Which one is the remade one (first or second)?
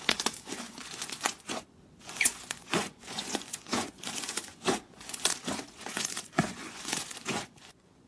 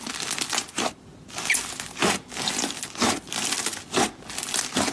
first